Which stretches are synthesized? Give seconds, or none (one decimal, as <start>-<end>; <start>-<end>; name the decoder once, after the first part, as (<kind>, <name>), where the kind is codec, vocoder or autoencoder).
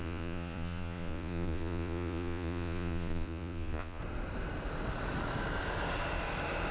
0.0-4.0 (vocoder, Vocos)